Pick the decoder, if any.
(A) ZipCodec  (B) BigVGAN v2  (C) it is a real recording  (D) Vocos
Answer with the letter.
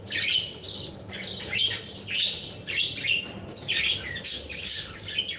C